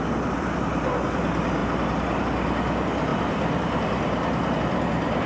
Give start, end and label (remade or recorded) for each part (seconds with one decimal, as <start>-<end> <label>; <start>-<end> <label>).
0.0-5.3 recorded